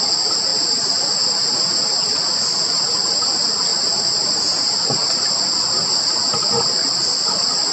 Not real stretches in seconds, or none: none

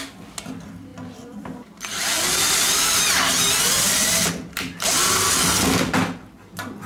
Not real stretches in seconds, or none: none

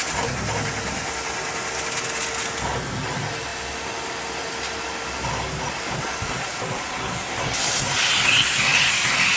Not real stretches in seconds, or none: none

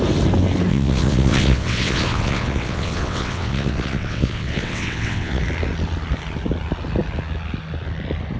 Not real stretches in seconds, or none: 0.7-5.4 (vocoder, WaveNeXt)